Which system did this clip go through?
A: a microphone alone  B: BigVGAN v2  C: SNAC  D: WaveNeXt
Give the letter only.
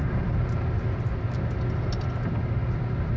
A